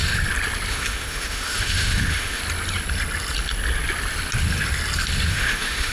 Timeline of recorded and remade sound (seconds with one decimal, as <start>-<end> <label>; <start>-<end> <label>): 0.0-0.7 recorded; 0.7-2.4 remade; 2.4-5.3 recorded; 5.3-5.9 remade